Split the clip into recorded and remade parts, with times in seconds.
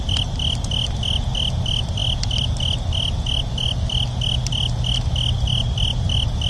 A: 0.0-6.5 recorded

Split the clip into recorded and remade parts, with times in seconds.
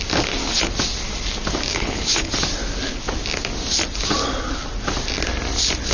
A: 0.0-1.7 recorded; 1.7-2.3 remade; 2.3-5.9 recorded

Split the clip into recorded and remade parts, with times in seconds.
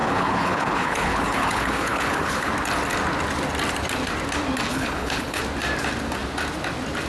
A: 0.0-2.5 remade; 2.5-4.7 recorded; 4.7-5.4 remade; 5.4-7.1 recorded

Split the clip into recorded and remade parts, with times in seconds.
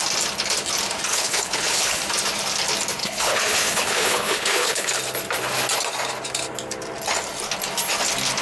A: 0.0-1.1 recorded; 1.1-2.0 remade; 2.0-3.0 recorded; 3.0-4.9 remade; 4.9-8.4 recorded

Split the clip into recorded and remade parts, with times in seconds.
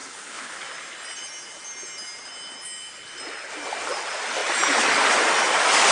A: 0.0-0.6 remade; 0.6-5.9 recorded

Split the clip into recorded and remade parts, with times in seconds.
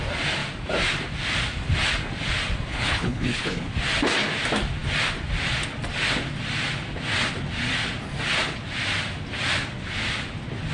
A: 0.0-2.7 recorded; 2.7-3.7 remade; 3.7-10.7 recorded